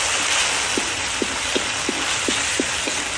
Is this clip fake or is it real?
real